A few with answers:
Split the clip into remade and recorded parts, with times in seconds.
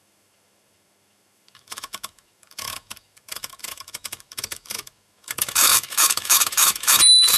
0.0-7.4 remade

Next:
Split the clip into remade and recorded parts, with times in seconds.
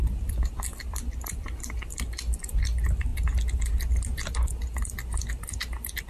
0.0-6.1 recorded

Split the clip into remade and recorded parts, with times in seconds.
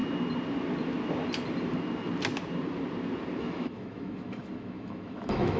0.0-3.4 recorded; 3.4-5.6 remade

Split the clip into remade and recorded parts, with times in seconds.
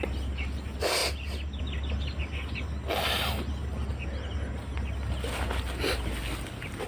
0.0-6.9 recorded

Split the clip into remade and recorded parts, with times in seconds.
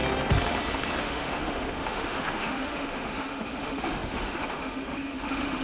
0.0-1.0 recorded; 1.0-5.6 remade